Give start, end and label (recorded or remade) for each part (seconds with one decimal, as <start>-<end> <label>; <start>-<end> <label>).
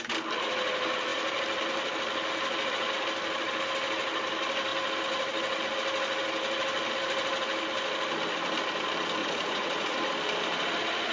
0.0-9.2 recorded; 9.2-10.1 remade; 10.1-11.1 recorded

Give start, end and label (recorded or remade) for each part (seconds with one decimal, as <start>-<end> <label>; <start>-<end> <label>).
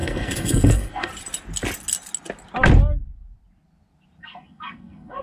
0.0-1.1 remade; 1.1-4.2 recorded; 4.2-5.2 remade